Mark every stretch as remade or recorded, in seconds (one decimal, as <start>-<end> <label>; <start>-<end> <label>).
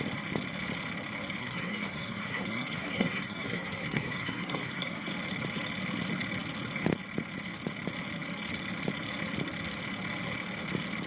0.0-1.4 recorded; 1.4-5.1 remade; 5.1-11.1 recorded